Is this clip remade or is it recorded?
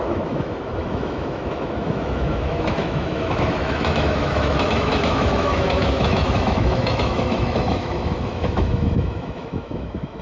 remade